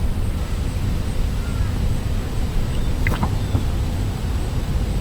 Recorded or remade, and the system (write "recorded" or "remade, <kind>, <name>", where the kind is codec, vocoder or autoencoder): recorded